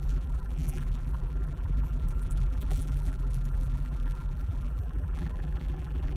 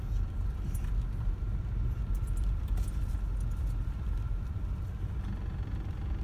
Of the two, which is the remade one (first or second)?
first